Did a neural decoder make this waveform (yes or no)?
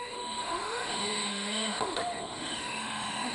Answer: yes